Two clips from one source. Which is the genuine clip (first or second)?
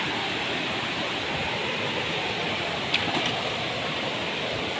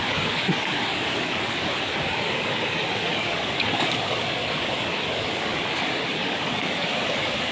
first